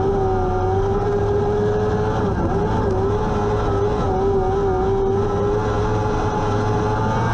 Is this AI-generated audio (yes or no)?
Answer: no